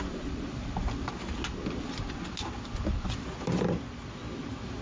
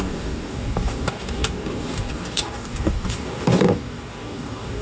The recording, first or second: first